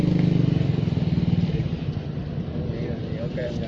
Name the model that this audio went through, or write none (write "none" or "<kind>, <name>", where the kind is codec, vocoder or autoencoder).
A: none